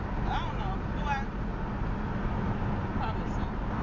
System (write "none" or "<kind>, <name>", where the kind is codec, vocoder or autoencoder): none